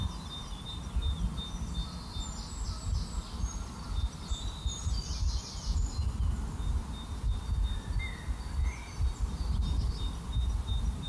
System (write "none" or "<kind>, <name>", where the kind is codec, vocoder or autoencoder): none